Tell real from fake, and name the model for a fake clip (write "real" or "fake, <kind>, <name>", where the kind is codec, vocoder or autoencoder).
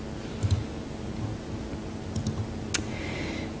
real